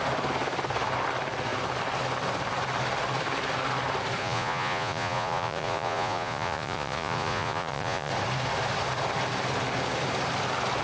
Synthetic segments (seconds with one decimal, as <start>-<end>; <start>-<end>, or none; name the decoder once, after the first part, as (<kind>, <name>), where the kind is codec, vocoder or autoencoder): 4.2-8.1 (vocoder, Vocos)